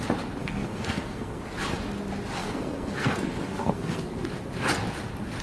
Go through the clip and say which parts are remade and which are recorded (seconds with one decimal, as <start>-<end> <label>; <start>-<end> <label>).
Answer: 0.0-0.4 recorded; 0.4-1.4 remade; 1.4-2.4 recorded; 2.4-4.3 remade; 4.3-5.4 recorded